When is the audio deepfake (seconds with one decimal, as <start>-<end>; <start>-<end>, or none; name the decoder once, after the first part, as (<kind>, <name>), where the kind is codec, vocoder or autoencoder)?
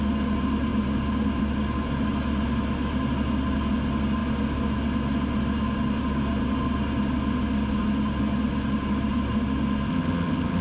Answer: 9.9-10.6 (vocoder, HiFi-GAN)